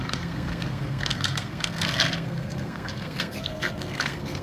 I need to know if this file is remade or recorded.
remade